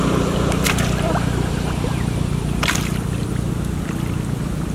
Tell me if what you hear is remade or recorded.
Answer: remade